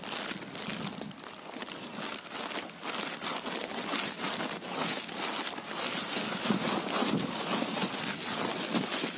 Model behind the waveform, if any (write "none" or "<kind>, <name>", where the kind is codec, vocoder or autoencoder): none